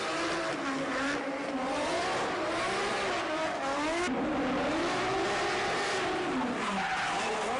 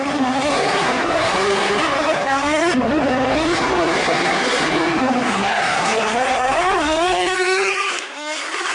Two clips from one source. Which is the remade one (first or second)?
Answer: second